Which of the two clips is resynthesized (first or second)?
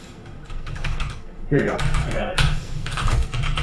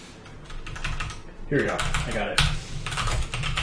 first